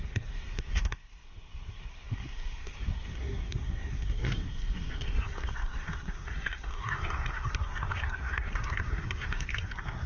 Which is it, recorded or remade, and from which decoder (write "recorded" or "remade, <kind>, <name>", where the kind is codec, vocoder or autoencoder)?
remade, codec, SNAC